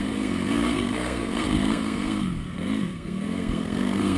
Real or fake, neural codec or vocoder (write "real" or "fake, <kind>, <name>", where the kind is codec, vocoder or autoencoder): fake, codec, SNAC